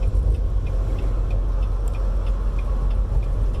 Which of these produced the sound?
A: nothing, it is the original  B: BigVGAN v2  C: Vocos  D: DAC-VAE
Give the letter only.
A